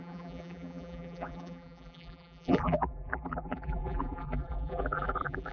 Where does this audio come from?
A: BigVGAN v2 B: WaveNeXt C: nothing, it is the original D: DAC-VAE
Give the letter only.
A